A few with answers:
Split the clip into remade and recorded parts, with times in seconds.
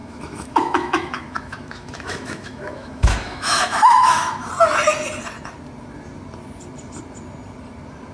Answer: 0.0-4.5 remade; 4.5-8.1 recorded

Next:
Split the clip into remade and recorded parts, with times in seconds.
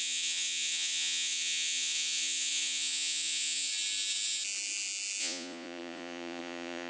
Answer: 0.0-3.7 remade; 3.7-5.2 recorded; 5.2-6.9 remade